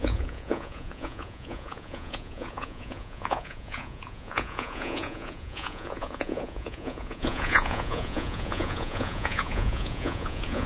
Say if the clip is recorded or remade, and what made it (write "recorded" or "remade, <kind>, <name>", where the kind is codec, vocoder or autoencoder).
remade, vocoder, Vocos